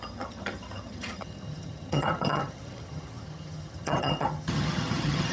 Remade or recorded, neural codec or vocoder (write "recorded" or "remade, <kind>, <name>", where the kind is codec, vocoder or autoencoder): remade, vocoder, HiFi-GAN